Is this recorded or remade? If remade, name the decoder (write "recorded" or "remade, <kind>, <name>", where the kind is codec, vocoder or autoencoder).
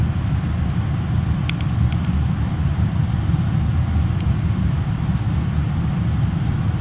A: recorded